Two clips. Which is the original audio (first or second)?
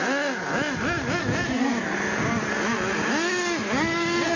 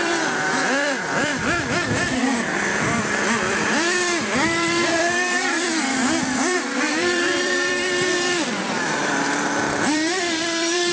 first